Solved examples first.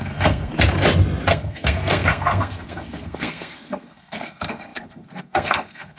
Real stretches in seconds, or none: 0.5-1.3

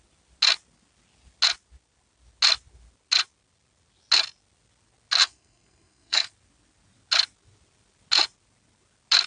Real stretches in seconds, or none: 0.0-5.2; 6.3-9.3